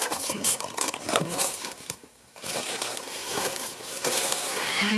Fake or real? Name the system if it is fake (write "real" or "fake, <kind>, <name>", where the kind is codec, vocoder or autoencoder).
fake, codec, SNAC